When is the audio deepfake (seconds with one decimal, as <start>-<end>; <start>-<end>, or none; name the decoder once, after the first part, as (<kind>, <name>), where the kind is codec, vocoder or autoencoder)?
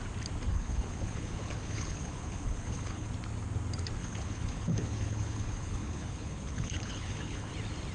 0.5-3.1 (codec, HILCodec); 4.0-7.5